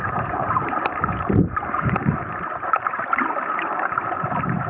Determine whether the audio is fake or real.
fake